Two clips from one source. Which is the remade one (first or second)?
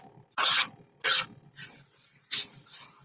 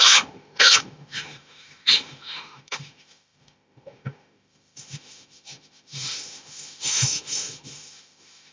second